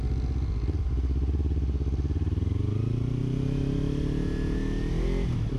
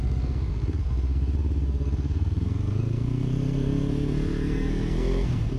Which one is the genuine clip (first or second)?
first